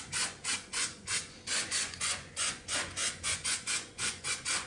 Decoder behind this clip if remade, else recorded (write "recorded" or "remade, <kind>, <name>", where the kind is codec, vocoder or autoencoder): remade, vocoder, Vocos